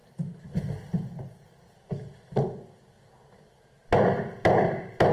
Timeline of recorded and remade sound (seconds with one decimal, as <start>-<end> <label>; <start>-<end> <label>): 0.0-5.1 recorded